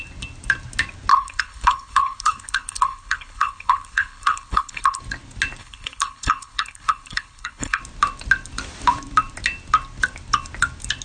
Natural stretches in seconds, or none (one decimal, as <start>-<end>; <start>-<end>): 0.0-1.1; 5.0-5.6; 7.8-11.0